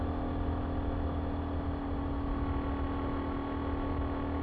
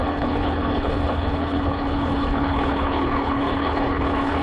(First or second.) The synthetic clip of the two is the second